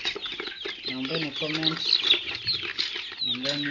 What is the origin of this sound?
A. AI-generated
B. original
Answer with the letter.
B